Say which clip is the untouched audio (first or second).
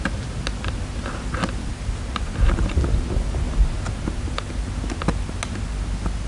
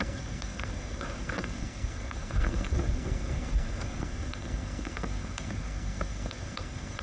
first